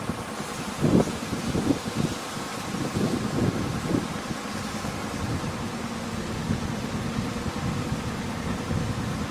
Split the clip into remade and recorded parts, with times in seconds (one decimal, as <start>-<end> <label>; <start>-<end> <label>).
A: 0.0-9.3 recorded